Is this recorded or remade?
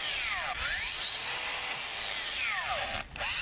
recorded